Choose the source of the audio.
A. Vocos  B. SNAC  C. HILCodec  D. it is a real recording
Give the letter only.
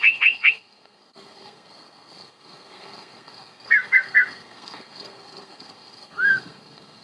B